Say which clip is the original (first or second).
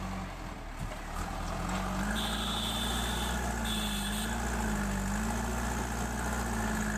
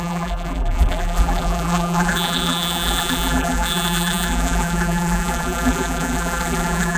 first